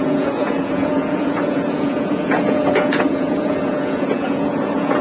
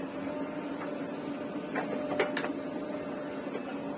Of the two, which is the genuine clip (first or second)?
second